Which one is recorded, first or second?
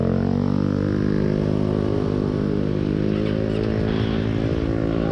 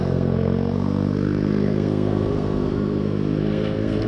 first